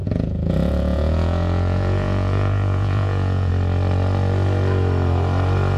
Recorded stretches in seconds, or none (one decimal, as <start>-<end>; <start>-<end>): 3.5-5.8

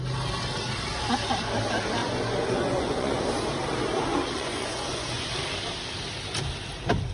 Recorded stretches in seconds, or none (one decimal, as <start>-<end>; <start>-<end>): 0.0-2.0; 3.2-4.1; 5.3-7.1

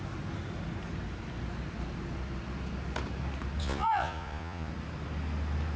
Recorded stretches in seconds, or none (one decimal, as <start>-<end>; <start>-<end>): 0.0-3.6; 4.7-5.8

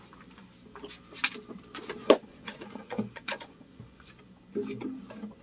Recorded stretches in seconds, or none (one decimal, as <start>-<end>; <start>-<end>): 0.0-2.0; 4.1-5.4